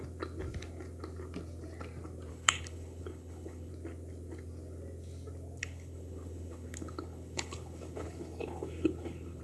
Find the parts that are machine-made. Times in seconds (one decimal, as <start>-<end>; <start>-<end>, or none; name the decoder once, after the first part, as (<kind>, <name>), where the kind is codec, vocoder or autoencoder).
2.3-3.7 (codec, HILCodec); 5.6-9.4